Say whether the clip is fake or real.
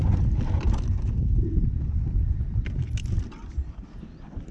real